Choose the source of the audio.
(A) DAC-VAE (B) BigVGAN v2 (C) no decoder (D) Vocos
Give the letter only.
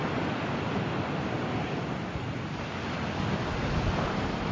C